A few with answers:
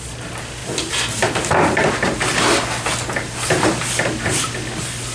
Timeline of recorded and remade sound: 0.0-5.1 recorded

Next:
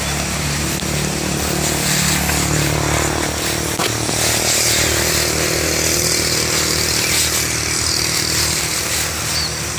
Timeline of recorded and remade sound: 0.0-9.8 recorded

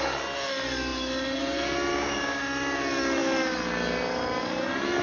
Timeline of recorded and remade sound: 0.0-1.9 recorded; 1.9-2.4 remade; 2.4-5.0 recorded

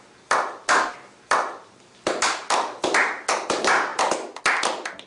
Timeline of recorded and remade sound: 0.0-5.1 recorded

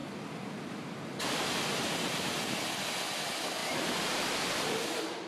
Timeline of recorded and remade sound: 0.0-3.6 recorded; 3.6-5.3 remade

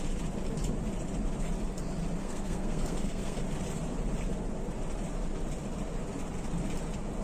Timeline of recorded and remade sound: 0.0-2.2 recorded; 2.2-3.4 remade; 3.4-7.2 recorded